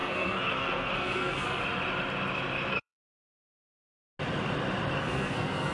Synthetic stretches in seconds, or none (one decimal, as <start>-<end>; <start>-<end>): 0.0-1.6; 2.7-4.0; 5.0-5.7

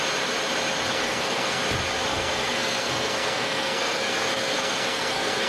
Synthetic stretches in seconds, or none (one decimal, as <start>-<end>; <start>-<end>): 0.9-1.6; 2.1-5.5

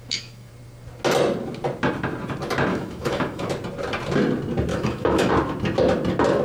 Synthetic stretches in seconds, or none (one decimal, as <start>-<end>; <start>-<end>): 0.0-0.5; 2.7-3.5; 4.7-5.3

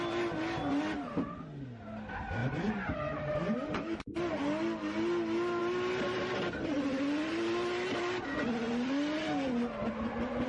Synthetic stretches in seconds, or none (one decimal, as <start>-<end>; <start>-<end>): 2.4-4.4